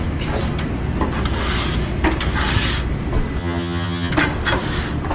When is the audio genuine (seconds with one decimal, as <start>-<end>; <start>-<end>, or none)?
0.0-3.4; 4.1-5.1